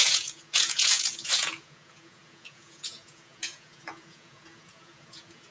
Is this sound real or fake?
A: fake